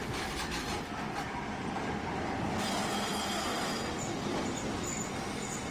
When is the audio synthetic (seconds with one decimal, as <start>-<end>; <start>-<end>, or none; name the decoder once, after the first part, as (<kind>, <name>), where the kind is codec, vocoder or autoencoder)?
none